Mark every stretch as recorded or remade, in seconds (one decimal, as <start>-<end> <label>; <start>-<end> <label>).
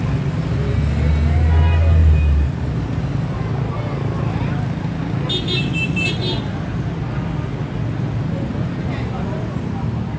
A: 0.0-10.2 recorded